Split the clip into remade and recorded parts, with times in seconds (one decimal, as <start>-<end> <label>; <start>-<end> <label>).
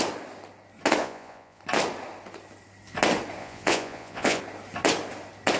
0.0-1.0 recorded; 1.0-1.6 remade; 1.6-3.4 recorded; 3.4-4.4 remade; 4.4-5.6 recorded